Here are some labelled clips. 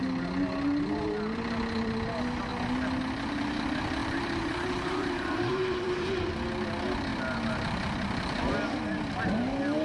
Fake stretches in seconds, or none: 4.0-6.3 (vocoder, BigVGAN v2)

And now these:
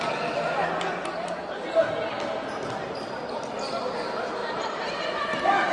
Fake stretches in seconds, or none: 1.0-2.1 (vocoder, BigVGAN v2); 4.4-5.0